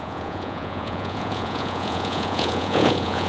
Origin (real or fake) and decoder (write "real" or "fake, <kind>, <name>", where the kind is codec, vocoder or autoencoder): fake, vocoder, Vocos